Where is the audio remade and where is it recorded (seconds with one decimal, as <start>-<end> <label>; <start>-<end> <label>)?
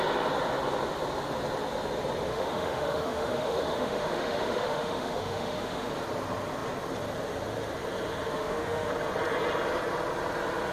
0.0-2.3 recorded; 2.3-5.9 remade; 5.9-8.3 recorded; 8.3-8.9 remade; 8.9-10.7 recorded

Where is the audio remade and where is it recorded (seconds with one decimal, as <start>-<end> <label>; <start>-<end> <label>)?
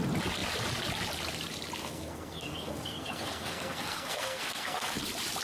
0.0-1.8 recorded; 1.8-5.0 remade; 5.0-5.4 recorded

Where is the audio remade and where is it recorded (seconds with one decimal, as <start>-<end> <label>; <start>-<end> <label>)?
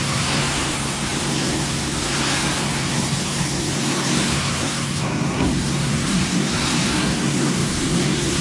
0.0-8.4 remade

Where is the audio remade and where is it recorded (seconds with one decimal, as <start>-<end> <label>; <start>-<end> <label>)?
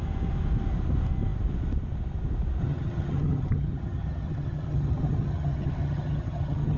0.0-2.6 recorded; 2.6-6.8 remade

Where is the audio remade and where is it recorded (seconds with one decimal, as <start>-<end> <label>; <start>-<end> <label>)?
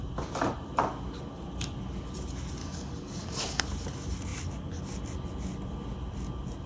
0.0-2.6 recorded; 2.6-3.6 remade; 3.6-6.7 recorded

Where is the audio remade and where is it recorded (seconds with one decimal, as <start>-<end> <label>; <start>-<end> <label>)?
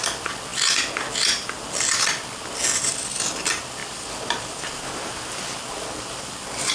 0.0-6.7 recorded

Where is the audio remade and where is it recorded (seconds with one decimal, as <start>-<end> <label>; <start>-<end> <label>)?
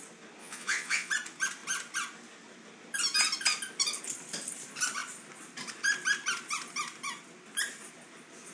0.0-0.4 recorded; 0.4-1.1 remade; 1.1-8.5 recorded